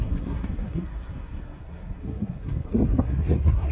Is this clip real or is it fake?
fake